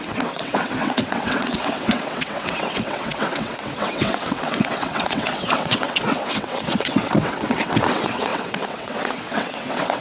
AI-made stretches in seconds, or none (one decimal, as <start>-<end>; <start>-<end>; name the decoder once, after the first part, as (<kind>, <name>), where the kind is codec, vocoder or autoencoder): 0.0-10.0 (vocoder, WaveNeXt)